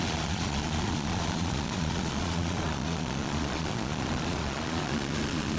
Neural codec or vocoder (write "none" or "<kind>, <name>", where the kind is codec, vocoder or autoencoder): vocoder, Vocos